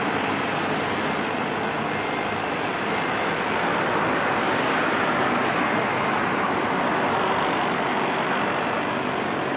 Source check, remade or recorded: recorded